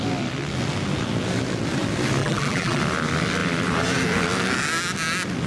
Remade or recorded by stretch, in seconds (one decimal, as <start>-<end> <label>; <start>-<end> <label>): 0.0-2.2 recorded; 2.2-2.8 remade; 2.8-5.5 recorded